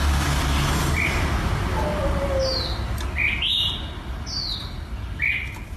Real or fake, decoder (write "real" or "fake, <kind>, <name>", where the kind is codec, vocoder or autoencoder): real